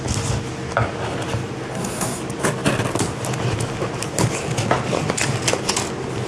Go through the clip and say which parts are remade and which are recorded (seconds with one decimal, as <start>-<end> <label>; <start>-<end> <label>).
0.0-1.7 recorded; 1.7-2.2 remade; 2.2-6.3 recorded